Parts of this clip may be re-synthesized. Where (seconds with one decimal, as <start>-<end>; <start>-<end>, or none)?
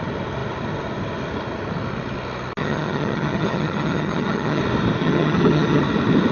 2.6-4.6; 5.0-5.8